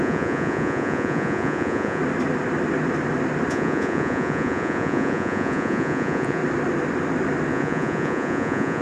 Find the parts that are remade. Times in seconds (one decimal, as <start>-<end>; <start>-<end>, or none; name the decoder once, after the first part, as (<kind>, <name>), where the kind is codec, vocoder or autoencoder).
0.0-2.0 (vocoder, Vocos); 3.5-6.4; 7.5-8.8